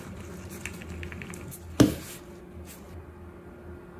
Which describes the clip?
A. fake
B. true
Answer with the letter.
B